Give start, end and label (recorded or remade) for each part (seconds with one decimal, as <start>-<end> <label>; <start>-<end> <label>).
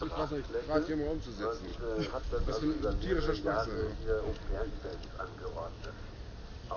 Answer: 0.0-6.8 recorded